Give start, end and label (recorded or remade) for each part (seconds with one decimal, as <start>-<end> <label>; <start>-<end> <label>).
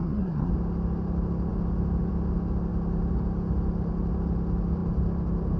0.0-0.5 remade; 0.5-5.6 recorded